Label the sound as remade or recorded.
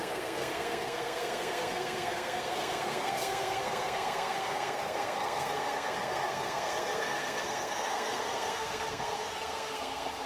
remade